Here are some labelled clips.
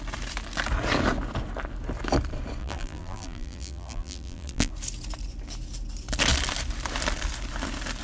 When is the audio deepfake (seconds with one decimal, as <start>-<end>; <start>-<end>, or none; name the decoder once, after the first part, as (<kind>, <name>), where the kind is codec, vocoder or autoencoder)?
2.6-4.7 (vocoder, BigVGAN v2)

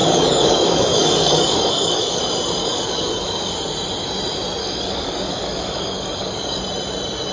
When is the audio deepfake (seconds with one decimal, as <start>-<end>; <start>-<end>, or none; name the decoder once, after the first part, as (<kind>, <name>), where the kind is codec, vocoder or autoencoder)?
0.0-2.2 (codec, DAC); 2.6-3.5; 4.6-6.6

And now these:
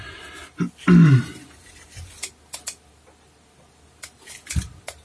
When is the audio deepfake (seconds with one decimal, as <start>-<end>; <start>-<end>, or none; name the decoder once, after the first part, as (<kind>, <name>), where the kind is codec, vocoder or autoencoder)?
none

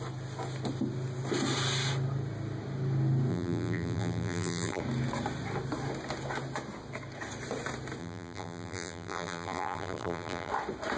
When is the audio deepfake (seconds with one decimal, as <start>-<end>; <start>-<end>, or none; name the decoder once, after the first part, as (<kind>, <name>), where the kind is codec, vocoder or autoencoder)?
3.3-4.8 (vocoder, BigVGAN v2); 8.0-10.5